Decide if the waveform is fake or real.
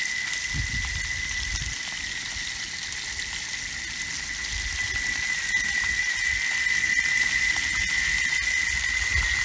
real